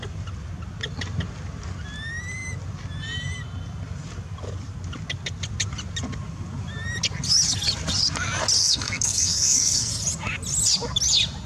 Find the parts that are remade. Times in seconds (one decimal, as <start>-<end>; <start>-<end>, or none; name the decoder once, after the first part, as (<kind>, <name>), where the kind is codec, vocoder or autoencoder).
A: 8.6-9.9 (codec, SNAC)